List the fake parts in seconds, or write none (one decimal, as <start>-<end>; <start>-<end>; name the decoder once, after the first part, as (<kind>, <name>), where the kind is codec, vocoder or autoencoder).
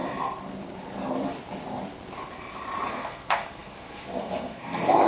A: 2.9-5.1 (codec, SNAC)